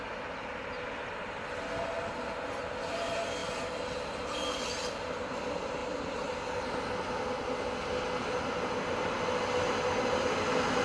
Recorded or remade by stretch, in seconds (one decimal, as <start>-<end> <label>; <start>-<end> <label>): 0.0-3.4 recorded; 3.4-4.7 remade; 4.7-5.8 recorded; 5.8-6.8 remade; 6.8-10.8 recorded